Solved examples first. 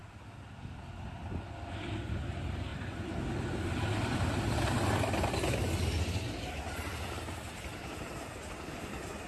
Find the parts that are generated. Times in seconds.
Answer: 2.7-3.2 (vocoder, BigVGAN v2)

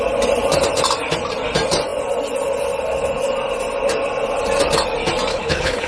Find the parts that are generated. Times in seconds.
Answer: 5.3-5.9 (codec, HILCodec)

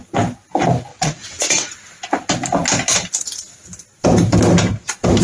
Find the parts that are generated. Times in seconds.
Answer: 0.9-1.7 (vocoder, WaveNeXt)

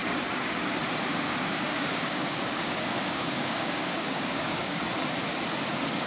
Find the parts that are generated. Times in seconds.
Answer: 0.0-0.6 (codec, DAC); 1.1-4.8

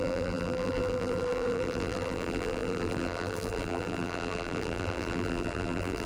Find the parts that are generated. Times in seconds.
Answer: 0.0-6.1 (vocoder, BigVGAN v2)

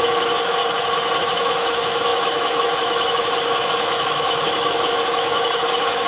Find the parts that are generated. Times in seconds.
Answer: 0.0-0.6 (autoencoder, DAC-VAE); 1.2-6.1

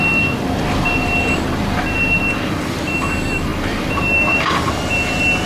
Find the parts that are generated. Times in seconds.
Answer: 3.5-4.7 (vocoder, BigVGAN v2)